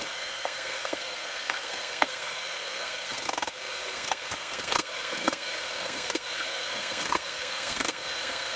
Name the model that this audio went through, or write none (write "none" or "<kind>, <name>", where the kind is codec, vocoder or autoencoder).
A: codec, SNAC